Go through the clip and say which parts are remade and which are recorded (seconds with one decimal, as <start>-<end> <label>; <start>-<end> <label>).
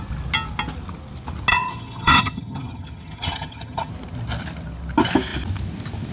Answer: 0.0-1.5 recorded; 1.5-3.9 remade; 3.9-6.1 recorded